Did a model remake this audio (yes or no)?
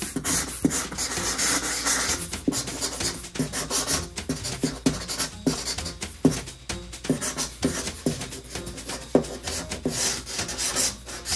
no